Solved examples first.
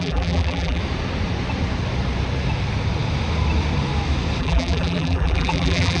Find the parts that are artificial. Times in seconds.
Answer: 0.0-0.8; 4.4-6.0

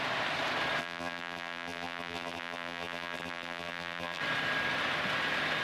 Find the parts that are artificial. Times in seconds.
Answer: 0.8-4.2

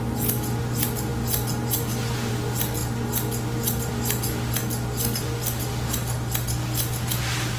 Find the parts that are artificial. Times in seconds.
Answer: none

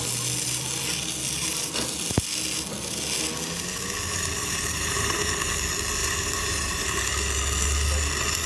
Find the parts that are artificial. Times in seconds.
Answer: 4.4-5.3; 6.0-7.0

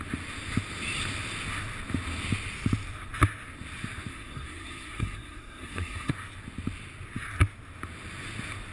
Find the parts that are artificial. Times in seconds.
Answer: 4.1-6.1

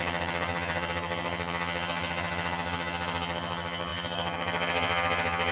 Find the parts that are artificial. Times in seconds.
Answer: 0.0-5.5

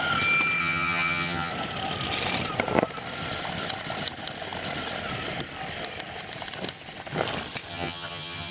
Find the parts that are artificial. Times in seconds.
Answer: 0.6-1.5; 7.7-8.5